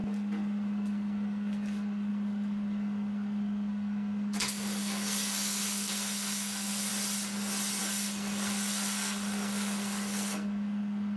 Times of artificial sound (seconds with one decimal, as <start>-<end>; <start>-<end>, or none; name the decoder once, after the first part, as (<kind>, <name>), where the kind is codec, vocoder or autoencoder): 0.0-6.9 (codec, SNAC); 7.8-11.2

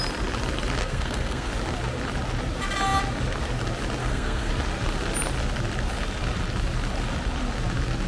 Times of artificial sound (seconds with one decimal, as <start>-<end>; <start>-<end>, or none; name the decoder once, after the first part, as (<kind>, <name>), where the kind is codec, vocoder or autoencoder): 0.8-1.5 (codec, SNAC); 4.0-4.5

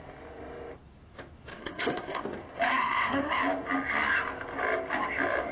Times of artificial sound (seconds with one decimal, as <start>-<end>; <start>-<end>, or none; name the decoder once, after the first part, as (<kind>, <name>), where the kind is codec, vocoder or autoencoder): 1.5-2.2 (codec, SNAC); 2.7-3.4

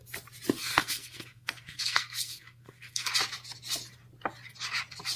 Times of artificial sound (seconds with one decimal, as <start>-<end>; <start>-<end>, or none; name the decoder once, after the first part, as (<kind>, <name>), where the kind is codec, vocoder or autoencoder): 0.6-3.1 (codec, SNAC)